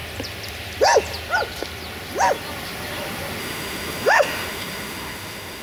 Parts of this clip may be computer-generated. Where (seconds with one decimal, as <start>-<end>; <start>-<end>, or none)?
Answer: 3.4-5.6